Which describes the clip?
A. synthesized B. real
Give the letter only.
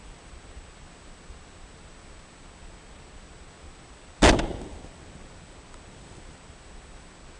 B